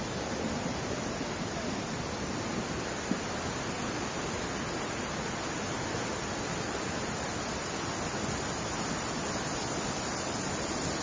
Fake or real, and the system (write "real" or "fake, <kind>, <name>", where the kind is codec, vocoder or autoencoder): real